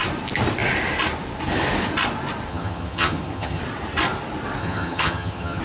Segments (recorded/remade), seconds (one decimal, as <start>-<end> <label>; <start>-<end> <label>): 0.0-2.5 recorded; 2.5-3.6 remade; 3.6-4.6 recorded; 4.6-5.6 remade